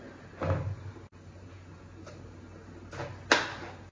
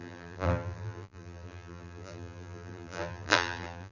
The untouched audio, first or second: first